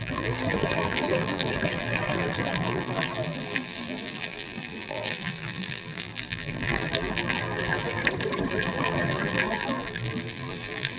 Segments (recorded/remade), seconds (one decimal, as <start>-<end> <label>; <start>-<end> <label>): 0.0-8.0 remade; 8.0-8.5 recorded; 8.5-11.0 remade